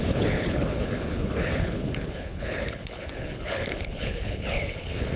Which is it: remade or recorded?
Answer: remade